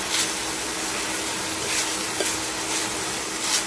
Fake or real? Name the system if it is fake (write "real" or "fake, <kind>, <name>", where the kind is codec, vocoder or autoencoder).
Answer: real